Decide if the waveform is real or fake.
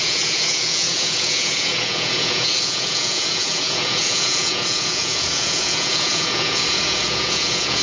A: fake